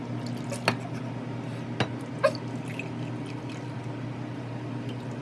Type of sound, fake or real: real